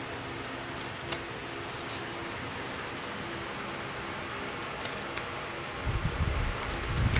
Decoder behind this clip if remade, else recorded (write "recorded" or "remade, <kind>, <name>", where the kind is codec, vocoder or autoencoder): recorded